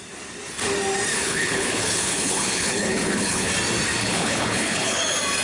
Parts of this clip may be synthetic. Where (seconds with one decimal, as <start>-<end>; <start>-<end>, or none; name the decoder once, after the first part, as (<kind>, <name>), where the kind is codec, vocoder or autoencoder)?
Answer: 1.1-3.5 (codec, HILCodec); 4.0-5.0